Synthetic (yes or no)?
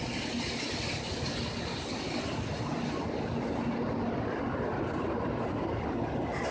no